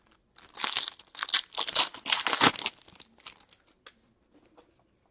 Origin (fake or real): real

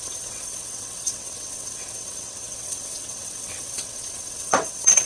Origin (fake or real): fake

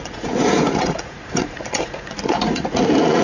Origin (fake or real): fake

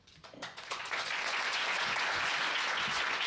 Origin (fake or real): fake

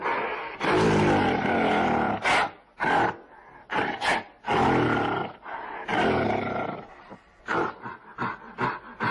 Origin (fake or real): real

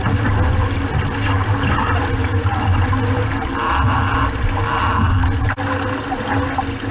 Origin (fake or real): real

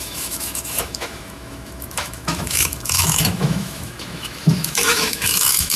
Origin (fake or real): fake